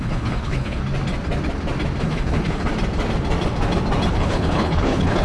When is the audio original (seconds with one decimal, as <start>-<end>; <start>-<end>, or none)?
0.8-2.0; 2.7-4.1